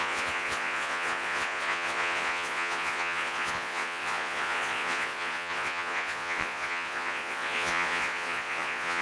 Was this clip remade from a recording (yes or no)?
yes